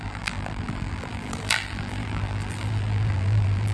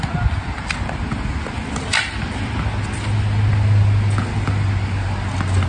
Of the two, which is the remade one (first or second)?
first